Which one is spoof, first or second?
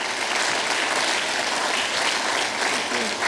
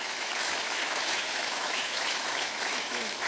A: second